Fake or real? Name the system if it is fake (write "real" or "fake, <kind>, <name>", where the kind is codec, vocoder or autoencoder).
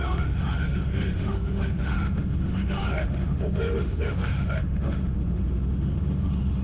fake, autoencoder, DAC-VAE